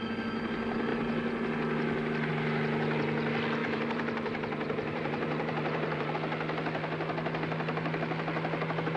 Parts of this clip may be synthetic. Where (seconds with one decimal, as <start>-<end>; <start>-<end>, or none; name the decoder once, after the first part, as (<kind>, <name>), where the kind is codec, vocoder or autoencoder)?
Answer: 3.6-6.1 (vocoder, BigVGAN v2)